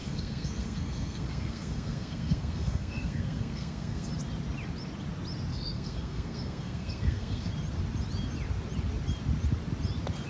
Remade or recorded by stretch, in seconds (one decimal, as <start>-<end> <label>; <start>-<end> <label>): 0.0-4.1 remade; 4.1-5.5 recorded; 5.5-7.5 remade; 7.5-10.3 recorded

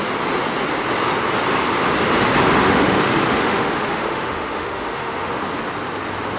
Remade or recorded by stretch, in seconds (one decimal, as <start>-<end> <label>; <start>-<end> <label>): 0.0-2.6 recorded; 2.6-5.4 remade; 5.4-6.4 recorded